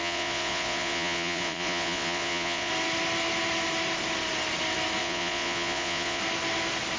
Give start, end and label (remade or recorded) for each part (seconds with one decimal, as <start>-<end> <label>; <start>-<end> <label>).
0.0-2.7 remade; 2.7-5.0 recorded; 5.0-6.2 remade; 6.2-7.0 recorded

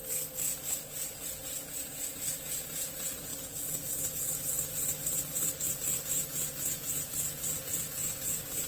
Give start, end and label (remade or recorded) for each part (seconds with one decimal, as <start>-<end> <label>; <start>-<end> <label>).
0.0-0.7 recorded; 0.7-3.3 remade; 3.3-5.7 recorded; 5.7-8.7 remade

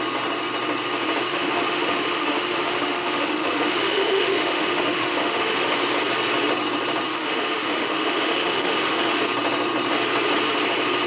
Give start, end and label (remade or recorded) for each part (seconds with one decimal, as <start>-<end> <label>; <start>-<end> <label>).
0.0-1.3 recorded; 1.3-5.8 remade; 5.8-7.1 recorded; 7.1-9.0 remade; 9.0-11.1 recorded

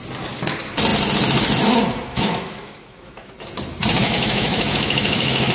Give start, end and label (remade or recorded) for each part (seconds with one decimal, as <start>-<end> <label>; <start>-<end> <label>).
0.0-2.1 recorded; 2.1-3.3 remade; 3.3-4.0 recorded; 4.0-5.5 remade

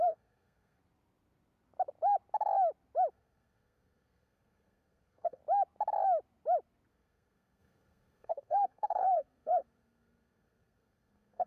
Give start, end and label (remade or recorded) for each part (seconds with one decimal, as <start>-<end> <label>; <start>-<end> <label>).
0.0-0.8 remade; 0.8-3.1 recorded; 3.1-5.4 remade; 5.4-6.9 recorded; 6.9-11.5 remade